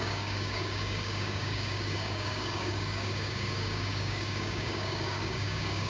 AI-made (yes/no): yes